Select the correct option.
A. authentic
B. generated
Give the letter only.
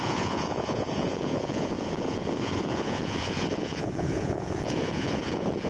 B